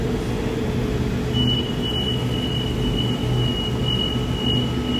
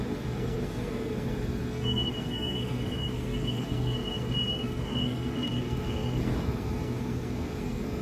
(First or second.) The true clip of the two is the first